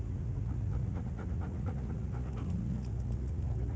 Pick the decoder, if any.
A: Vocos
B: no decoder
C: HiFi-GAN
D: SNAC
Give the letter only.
A